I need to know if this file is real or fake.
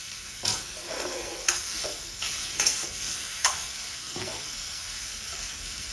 fake